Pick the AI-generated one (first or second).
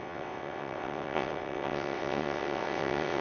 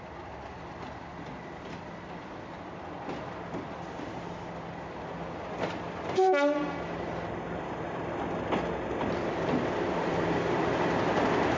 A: first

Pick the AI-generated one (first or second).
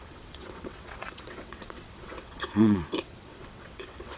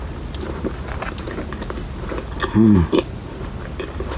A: first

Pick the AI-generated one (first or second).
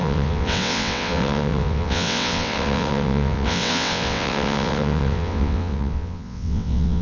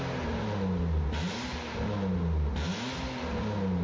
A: first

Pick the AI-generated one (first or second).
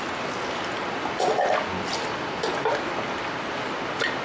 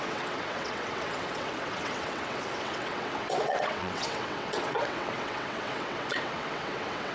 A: second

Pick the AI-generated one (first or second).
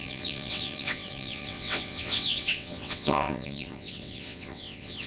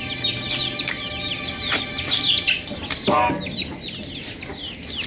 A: first